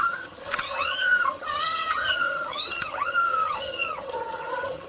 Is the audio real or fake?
fake